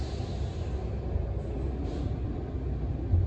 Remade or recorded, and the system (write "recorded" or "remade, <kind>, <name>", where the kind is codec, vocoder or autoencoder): recorded